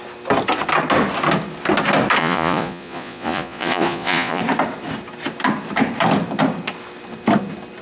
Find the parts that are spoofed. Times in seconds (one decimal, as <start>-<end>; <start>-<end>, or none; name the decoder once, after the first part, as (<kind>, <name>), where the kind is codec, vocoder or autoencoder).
2.2-4.4 (vocoder, Vocos)